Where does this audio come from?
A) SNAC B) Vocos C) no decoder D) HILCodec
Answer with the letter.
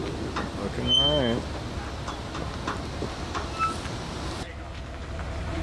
C